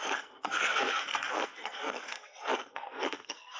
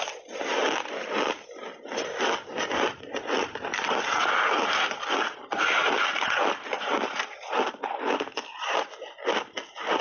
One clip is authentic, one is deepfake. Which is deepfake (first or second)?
first